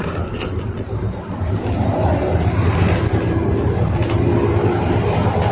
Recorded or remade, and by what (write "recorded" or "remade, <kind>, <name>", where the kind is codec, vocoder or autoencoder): recorded